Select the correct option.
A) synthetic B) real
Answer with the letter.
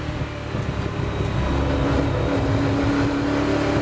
B